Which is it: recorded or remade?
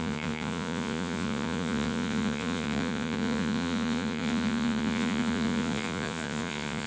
remade